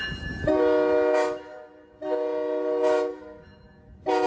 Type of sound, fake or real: real